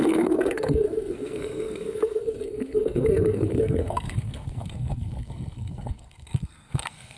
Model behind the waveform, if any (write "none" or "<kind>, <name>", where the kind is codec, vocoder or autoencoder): codec, SNAC